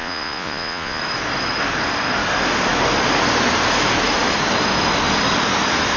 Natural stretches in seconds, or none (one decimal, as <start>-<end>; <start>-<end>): 1.0-6.0